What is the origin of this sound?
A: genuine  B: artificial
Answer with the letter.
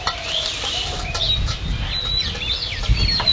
A